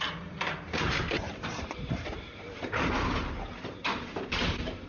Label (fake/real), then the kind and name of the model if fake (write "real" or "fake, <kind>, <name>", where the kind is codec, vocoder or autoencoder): fake, vocoder, BigVGAN v2